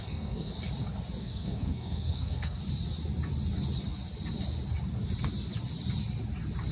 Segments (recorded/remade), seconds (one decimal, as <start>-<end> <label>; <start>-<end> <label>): 0.0-0.5 remade; 0.5-1.2 recorded; 1.2-2.6 remade; 2.6-6.7 recorded